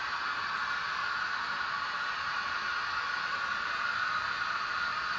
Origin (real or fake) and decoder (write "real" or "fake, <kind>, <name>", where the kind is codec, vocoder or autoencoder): real